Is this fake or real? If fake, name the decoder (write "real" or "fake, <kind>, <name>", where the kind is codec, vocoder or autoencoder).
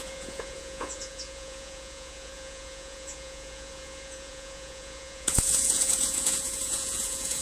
fake, vocoder, Vocos